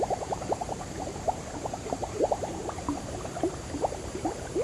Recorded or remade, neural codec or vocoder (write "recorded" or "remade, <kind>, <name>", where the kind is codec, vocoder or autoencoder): remade, vocoder, BigVGAN v2